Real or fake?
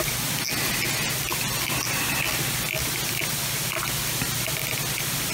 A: real